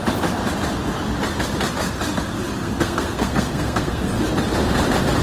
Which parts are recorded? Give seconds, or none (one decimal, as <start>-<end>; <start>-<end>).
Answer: 0.0-2.6; 4.1-5.2